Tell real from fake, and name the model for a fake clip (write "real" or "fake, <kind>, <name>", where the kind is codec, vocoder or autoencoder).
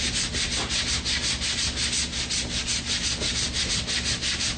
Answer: real